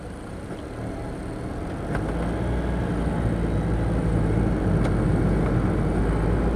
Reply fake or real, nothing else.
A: real